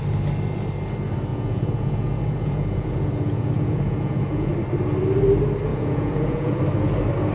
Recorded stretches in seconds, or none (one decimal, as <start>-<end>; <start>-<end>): 0.0-1.3; 4.5-5.7; 6.6-7.3